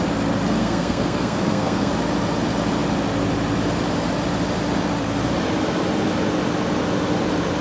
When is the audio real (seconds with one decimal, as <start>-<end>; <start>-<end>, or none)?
0.0-0.6; 1.9-7.6

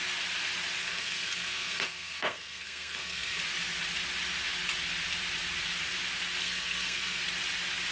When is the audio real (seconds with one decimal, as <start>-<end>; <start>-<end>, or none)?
0.0-0.8; 3.4-6.4; 7.2-7.9

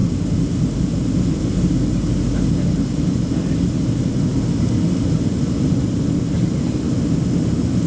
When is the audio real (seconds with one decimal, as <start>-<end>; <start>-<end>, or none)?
0.0-7.9

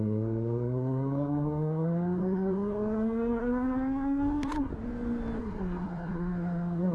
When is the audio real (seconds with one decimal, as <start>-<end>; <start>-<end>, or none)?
4.7-5.4

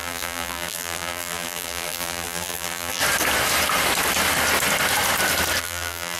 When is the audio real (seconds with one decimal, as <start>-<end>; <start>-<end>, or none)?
3.0-5.6

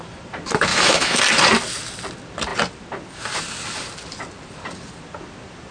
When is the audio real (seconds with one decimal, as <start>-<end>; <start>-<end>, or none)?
0.0-0.7; 1.2-5.7

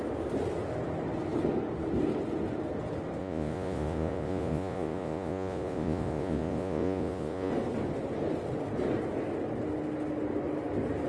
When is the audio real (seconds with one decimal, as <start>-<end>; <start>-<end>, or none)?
0.0-3.2; 7.5-11.1

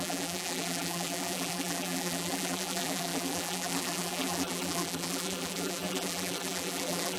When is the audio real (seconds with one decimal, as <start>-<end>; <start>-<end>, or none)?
none